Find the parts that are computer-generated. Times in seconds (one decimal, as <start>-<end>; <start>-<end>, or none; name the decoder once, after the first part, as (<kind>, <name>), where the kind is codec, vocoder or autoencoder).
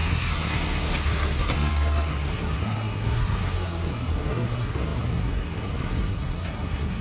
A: 0.0-7.0 (codec, SNAC)